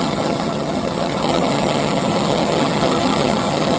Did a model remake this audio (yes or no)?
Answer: yes